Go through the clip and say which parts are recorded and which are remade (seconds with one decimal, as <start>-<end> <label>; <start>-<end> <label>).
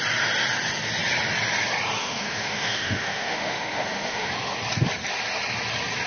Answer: 0.0-2.0 recorded; 2.0-4.3 remade; 4.3-6.1 recorded